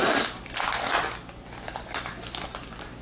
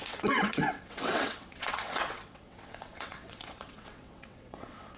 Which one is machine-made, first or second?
second